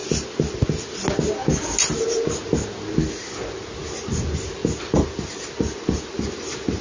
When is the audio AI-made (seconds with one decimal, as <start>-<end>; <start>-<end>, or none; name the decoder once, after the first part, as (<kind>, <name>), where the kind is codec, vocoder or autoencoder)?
none